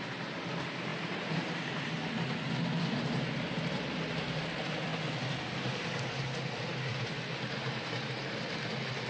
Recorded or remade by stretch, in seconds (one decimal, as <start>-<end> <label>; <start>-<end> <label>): 0.0-0.9 recorded; 0.9-1.7 remade; 1.7-6.9 recorded; 6.9-8.1 remade; 8.1-9.1 recorded

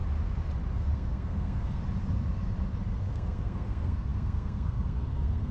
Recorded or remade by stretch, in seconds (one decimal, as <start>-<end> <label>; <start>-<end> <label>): 0.0-0.8 recorded; 0.8-1.8 remade; 1.8-3.0 recorded; 3.0-5.5 remade

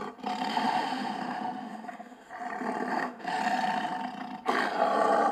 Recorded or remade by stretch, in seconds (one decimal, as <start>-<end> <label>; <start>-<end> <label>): 0.0-0.5 recorded; 0.5-2.3 remade; 2.3-2.9 recorded; 2.9-3.4 remade; 3.4-5.3 recorded

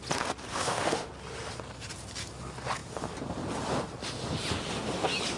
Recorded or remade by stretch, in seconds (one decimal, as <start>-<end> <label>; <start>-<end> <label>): 0.0-0.5 recorded; 0.5-1.1 remade; 1.1-5.4 recorded

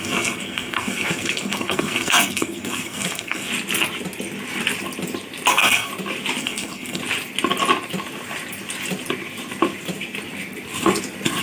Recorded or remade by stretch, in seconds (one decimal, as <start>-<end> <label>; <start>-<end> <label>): 0.0-3.5 remade; 3.5-5.5 recorded; 5.5-5.9 remade; 5.9-6.4 recorded; 6.4-7.0 remade; 7.0-11.4 recorded